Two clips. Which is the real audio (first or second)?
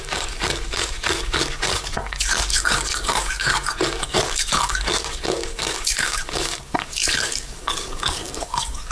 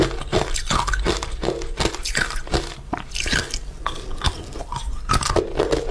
second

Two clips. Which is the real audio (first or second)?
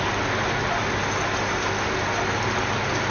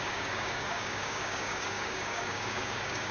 first